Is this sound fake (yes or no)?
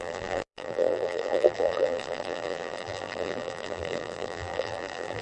yes